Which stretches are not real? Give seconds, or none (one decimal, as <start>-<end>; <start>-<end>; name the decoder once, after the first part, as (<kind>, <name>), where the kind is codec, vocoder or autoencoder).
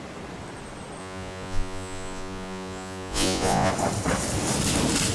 1.0-3.7 (vocoder, Vocos)